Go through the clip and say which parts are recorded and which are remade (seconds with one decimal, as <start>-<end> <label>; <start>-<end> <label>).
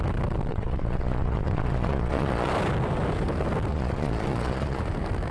0.0-0.5 recorded; 0.5-2.5 remade; 2.5-3.7 recorded; 3.7-4.8 remade; 4.8-5.3 recorded